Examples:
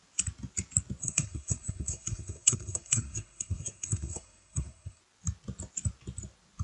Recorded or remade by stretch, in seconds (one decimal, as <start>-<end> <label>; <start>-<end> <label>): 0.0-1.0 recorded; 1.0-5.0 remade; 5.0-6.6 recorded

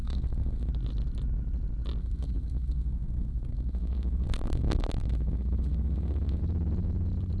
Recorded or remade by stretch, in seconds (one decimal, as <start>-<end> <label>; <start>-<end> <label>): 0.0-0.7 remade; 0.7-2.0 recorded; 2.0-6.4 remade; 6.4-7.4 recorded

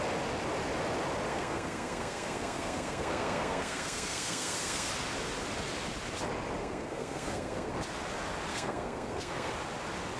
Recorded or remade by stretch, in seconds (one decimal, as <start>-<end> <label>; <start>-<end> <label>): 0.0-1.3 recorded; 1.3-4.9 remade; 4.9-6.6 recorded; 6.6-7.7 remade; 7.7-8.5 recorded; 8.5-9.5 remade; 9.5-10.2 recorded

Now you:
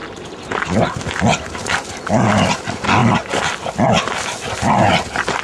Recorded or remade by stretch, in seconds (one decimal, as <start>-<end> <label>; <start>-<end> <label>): 0.0-5.4 recorded